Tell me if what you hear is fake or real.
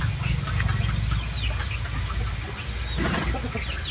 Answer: real